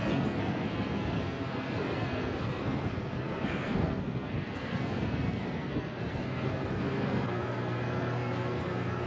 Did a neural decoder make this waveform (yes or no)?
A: yes